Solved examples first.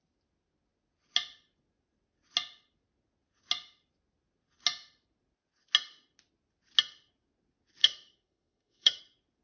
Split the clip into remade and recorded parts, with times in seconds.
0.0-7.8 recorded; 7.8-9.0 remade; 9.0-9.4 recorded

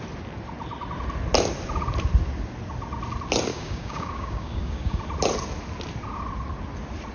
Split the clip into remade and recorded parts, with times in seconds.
0.0-3.5 recorded; 3.5-5.0 remade; 5.0-7.1 recorded

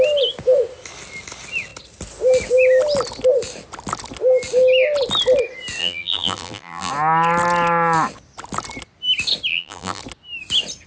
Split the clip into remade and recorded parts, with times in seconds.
0.0-5.8 recorded; 5.8-6.9 remade; 6.9-9.5 recorded; 9.5-10.0 remade; 10.0-10.9 recorded

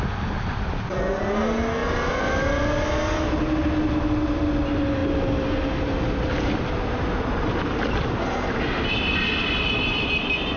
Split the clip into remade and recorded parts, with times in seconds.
0.0-10.6 recorded

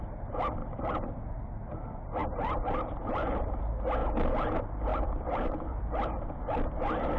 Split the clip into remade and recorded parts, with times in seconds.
0.0-0.6 recorded; 0.6-1.2 remade; 1.2-2.2 recorded; 2.2-3.6 remade; 3.6-4.9 recorded; 4.9-7.2 remade